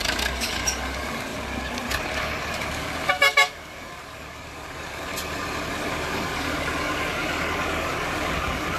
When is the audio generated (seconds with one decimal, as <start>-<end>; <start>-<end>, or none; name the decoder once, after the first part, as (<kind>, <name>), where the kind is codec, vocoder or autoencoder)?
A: 0.0-5.1 (codec, DAC); 5.7-8.8